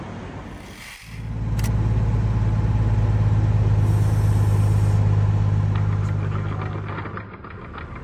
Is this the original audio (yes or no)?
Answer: yes